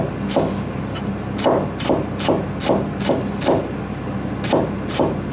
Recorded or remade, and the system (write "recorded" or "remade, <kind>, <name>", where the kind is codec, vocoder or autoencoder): recorded